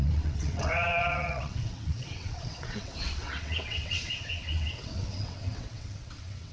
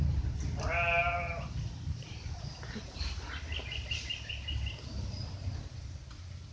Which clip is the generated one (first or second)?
first